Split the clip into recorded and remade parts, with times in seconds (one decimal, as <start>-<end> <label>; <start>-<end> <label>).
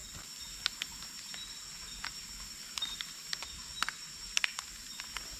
0.0-5.4 recorded